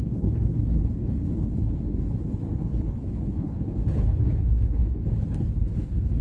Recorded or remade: remade